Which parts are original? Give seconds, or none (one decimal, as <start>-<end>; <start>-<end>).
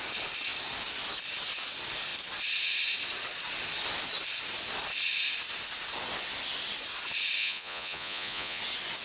0.0-7.4; 8.6-9.0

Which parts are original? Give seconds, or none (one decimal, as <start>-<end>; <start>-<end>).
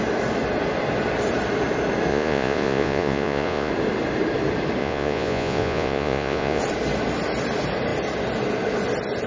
0.0-2.1; 3.7-4.8; 6.6-9.3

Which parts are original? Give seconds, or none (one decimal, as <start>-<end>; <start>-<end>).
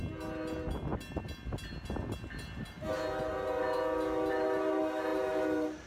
0.0-5.9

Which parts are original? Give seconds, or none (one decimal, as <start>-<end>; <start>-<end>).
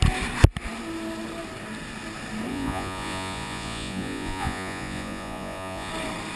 0.0-2.5; 5.9-6.4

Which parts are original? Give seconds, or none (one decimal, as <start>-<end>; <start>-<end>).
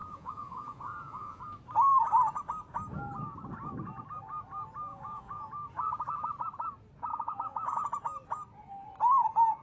1.4-4.9; 5.5-7.1; 7.8-9.6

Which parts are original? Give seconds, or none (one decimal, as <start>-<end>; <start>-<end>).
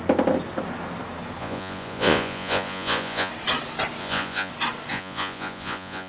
0.0-1.4; 3.3-4.0; 4.5-4.9